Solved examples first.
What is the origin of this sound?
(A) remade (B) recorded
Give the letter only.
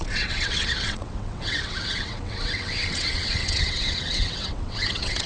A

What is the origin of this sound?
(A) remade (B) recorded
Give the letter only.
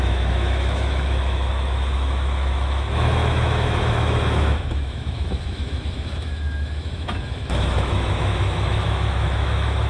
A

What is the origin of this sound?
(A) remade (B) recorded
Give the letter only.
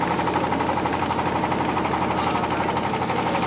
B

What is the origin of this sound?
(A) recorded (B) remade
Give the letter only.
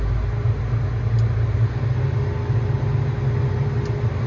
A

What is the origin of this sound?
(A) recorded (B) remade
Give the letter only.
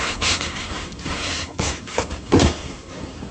B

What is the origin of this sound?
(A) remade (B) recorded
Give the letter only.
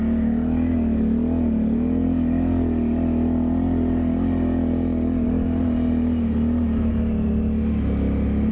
B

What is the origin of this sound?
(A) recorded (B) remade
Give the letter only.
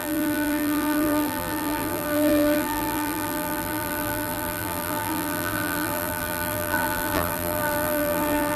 B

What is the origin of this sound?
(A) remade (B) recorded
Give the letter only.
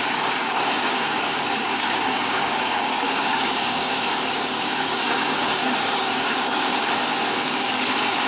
A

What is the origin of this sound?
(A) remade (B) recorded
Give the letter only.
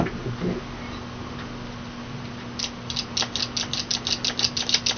B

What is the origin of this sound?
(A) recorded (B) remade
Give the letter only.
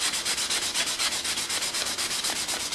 A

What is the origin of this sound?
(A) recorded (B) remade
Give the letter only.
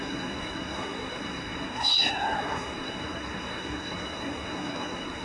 B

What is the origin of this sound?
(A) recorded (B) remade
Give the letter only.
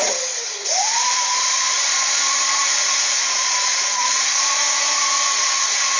B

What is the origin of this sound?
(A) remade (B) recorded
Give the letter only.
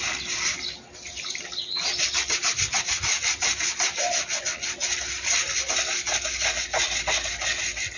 B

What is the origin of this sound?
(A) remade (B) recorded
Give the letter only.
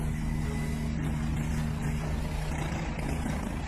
B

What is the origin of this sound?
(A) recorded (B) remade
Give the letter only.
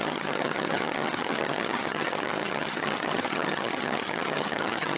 B